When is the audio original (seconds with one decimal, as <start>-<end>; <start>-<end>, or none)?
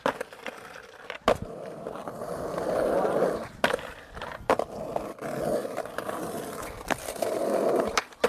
0.0-8.3